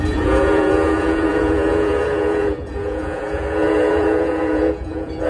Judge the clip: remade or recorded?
remade